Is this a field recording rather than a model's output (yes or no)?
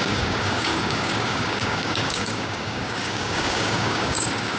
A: no